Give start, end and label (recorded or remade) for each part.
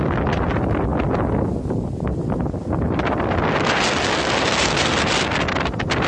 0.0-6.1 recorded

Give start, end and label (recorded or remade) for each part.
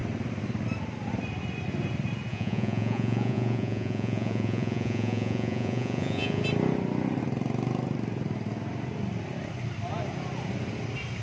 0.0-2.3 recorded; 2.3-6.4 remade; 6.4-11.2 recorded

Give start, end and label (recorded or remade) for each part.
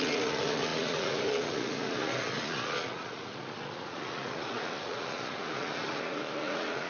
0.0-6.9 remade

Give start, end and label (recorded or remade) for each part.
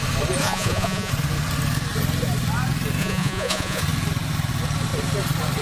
0.0-0.4 recorded; 0.4-1.1 remade; 1.1-3.0 recorded; 3.0-3.8 remade; 3.8-5.6 recorded